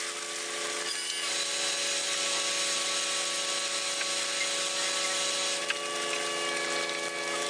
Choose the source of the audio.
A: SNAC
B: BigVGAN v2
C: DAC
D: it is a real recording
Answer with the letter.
D